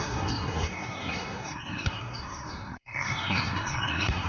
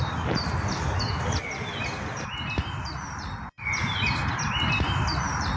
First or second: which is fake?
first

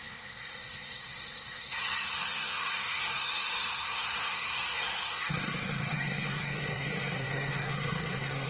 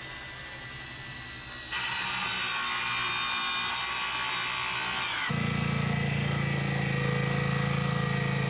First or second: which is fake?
first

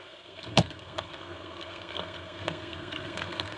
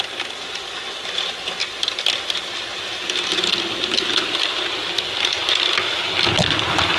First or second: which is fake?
first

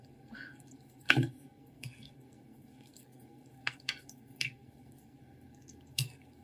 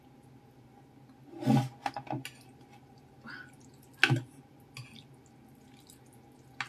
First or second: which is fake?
first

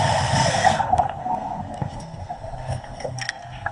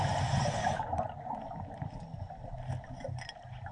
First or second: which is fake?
first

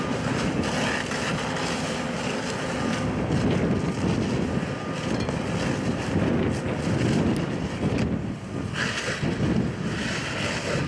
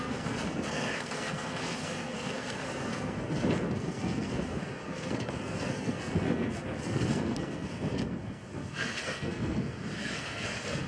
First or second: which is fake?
second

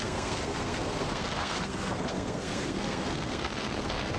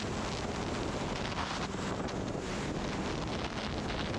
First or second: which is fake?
first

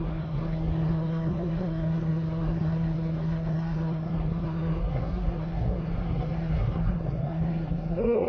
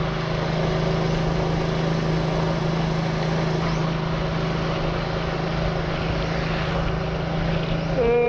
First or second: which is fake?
first